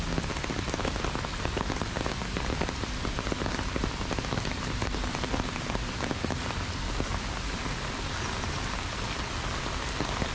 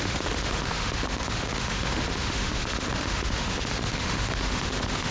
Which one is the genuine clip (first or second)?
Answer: first